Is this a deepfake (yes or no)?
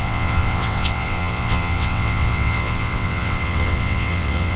yes